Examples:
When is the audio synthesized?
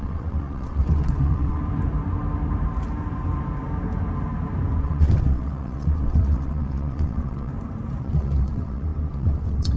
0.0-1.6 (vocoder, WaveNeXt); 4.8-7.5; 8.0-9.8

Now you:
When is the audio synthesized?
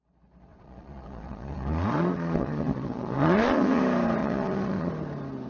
0.5-3.8 (vocoder, Vocos); 4.2-4.9